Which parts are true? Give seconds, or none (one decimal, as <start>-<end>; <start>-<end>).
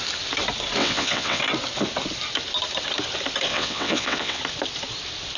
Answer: 0.0-0.8; 1.4-3.5; 4.4-5.4